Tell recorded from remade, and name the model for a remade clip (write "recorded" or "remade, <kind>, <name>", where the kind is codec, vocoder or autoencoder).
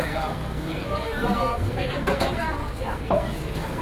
remade, codec, SNAC